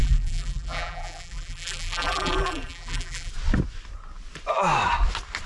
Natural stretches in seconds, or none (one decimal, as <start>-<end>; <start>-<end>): 3.3-5.5